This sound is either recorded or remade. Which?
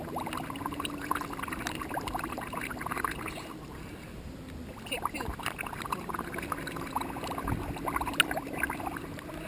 recorded